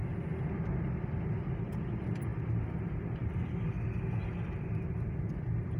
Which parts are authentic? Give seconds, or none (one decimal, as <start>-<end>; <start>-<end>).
0.0-5.8